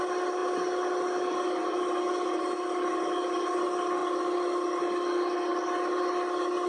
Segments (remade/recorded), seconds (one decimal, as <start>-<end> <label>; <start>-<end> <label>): 0.0-6.7 recorded